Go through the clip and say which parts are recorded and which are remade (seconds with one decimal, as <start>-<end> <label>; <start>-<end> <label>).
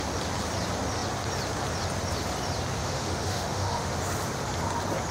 0.0-2.8 recorded; 2.8-3.9 remade; 3.9-5.1 recorded